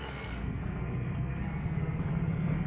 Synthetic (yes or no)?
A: yes